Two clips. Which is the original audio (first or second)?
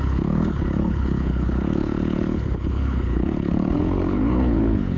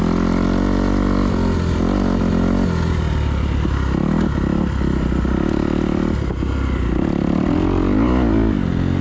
second